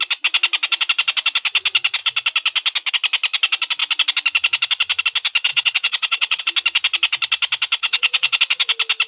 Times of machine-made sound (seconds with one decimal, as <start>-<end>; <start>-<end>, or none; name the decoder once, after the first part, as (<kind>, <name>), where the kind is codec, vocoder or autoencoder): 5.5-6.4 (vocoder, WaveNeXt); 7.8-8.4